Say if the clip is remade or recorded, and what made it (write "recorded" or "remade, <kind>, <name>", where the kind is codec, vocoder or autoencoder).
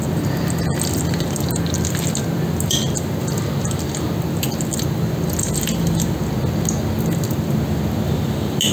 recorded